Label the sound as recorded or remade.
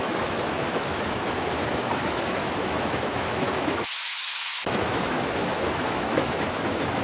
remade